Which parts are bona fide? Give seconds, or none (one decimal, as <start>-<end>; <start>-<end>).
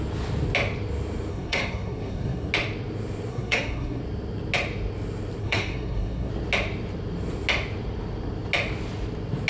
0.0-1.3; 2.5-3.3; 4.0-5.4; 6.3-9.5